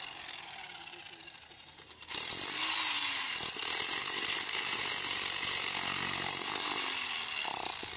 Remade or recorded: recorded